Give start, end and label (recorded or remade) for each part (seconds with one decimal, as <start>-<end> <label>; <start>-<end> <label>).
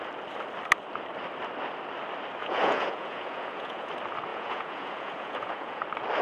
0.0-2.4 recorded; 2.4-3.9 remade; 3.9-4.3 recorded; 4.3-5.8 remade; 5.8-6.2 recorded